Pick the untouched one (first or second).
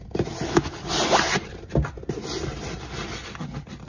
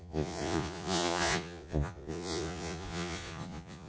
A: first